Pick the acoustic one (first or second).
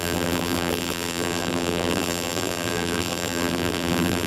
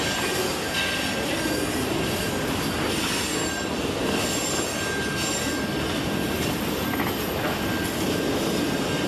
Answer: second